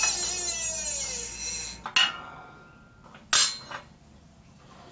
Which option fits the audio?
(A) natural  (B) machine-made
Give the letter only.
A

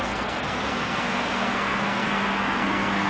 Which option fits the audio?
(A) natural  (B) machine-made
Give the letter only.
B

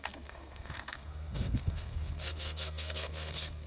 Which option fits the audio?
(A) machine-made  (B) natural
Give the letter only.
A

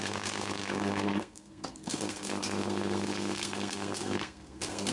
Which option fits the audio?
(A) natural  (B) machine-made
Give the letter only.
B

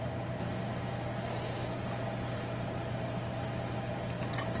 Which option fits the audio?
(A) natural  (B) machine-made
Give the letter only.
A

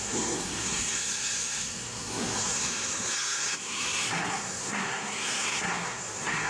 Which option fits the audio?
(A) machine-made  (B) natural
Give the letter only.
A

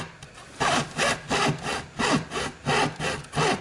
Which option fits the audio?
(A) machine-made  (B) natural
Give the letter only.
B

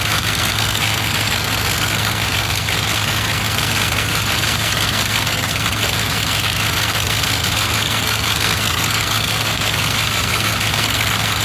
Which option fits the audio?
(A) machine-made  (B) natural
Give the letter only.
A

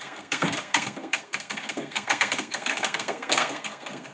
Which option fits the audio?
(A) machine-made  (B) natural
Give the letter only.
A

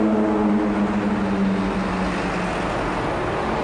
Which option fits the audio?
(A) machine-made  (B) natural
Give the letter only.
B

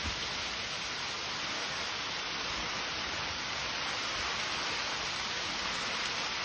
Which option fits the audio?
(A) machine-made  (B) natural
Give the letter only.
B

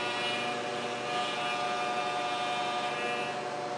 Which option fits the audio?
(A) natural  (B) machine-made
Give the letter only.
A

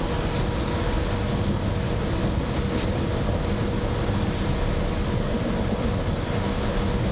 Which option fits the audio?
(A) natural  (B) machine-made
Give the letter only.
A